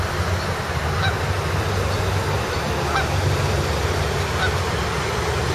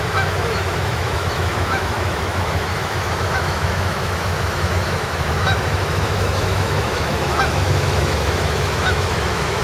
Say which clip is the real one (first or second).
first